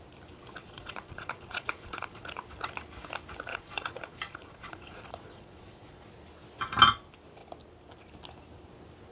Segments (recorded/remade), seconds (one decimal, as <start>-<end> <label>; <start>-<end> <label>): 0.0-0.6 recorded; 0.6-2.2 remade; 2.2-3.5 recorded; 3.5-6.1 remade; 6.1-9.1 recorded

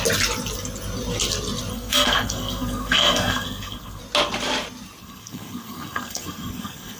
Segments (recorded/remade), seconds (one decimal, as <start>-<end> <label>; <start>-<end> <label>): 0.0-1.7 recorded; 1.7-4.0 remade; 4.0-5.0 recorded; 5.0-7.0 remade

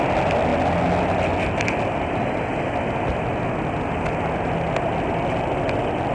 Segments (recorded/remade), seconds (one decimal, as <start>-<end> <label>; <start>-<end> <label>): 0.0-6.1 recorded

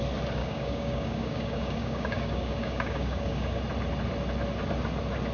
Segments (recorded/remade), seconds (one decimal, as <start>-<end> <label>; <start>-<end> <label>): 0.0-0.4 recorded; 0.4-3.6 remade; 3.6-5.3 recorded

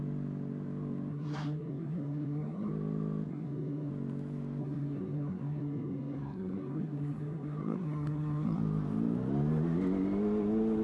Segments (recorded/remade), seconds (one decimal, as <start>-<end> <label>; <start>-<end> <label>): 0.0-1.1 recorded; 1.1-2.7 remade; 2.7-3.3 recorded; 3.3-3.9 remade; 3.9-4.6 recorded; 4.6-8.6 remade; 8.6-10.8 recorded

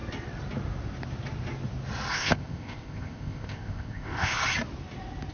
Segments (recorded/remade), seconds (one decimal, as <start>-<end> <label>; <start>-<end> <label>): 0.0-2.1 recorded; 2.1-4.4 remade; 4.4-5.3 recorded

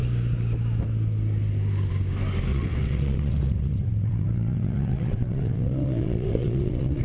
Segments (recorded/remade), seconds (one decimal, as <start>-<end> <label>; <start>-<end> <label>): 0.0-2.5 recorded; 2.5-7.0 remade